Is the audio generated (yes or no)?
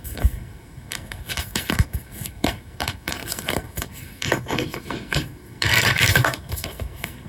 yes